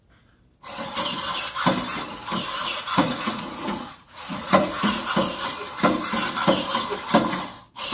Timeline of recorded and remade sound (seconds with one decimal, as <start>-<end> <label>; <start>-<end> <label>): 0.0-2.7 recorded; 2.7-5.1 remade; 5.1-7.9 recorded